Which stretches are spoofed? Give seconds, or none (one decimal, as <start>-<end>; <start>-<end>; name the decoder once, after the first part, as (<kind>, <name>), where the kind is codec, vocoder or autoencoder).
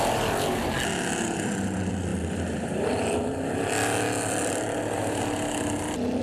2.1-5.2 (vocoder, BigVGAN v2)